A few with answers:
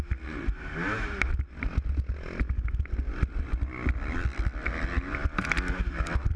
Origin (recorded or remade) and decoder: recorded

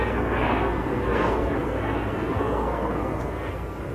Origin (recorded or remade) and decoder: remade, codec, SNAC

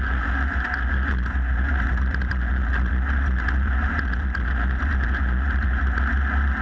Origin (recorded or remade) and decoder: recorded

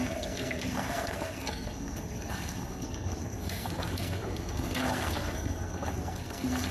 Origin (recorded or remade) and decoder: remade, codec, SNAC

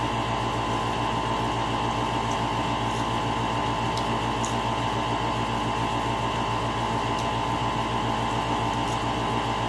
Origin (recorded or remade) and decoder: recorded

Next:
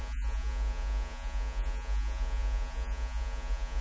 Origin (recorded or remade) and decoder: remade, vocoder, Vocos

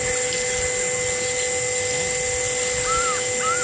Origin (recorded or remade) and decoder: recorded